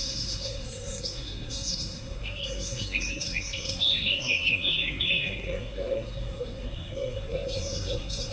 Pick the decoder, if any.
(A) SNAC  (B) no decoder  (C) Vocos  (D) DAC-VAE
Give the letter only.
A